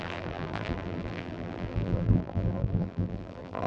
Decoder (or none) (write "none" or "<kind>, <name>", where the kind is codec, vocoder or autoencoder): vocoder, BigVGAN v2